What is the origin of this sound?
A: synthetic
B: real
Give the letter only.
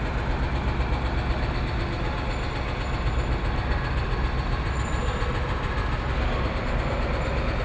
B